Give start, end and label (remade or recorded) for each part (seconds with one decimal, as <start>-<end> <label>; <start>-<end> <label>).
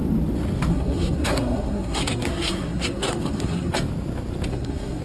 0.0-0.7 recorded; 0.7-3.7 remade; 3.7-4.5 recorded; 4.5-5.0 remade